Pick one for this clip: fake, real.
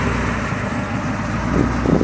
real